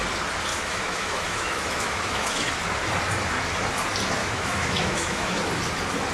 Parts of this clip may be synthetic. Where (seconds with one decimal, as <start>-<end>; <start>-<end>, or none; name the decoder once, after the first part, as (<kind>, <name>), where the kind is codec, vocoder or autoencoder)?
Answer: 0.5-2.5 (autoencoder, DAC-VAE); 4.2-5.4